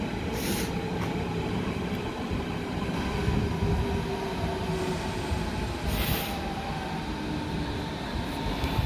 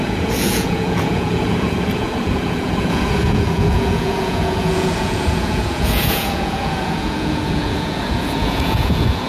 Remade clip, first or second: second